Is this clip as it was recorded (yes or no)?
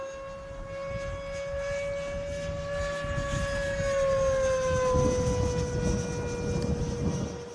yes